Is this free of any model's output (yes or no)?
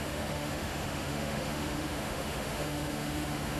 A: no